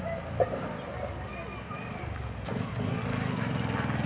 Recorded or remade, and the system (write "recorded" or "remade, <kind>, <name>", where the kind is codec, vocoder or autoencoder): recorded